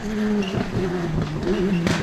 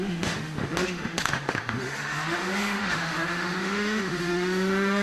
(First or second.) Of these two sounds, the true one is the first